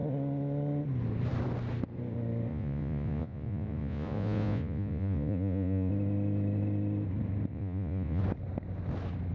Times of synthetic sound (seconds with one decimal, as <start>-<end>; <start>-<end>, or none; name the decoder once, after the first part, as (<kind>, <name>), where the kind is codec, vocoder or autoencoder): 2.5-5.9 (vocoder, Vocos); 7.5-8.2